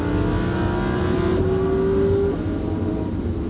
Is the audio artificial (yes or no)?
no